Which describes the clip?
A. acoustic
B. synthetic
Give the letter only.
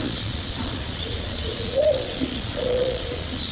B